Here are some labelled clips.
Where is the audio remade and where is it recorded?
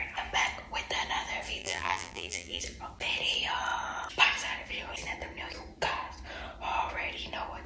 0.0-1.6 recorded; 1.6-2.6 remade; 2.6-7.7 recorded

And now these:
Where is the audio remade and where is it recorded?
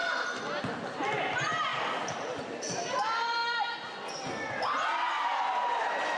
0.0-1.7 recorded; 1.7-2.4 remade; 2.4-6.2 recorded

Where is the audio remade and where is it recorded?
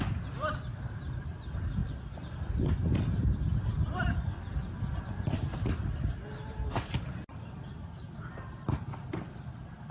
0.0-9.9 remade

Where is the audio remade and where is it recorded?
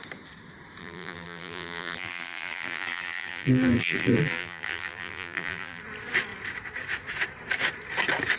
0.0-0.8 recorded; 0.8-5.8 remade; 5.8-8.4 recorded